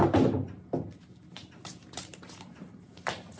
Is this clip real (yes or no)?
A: yes